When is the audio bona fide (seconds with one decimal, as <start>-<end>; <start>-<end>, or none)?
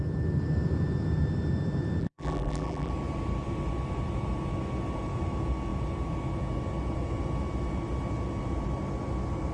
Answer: 0.0-2.0; 2.9-9.5